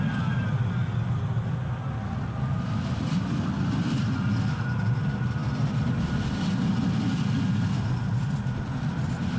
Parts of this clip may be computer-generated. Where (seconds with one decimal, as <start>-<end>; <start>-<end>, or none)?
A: none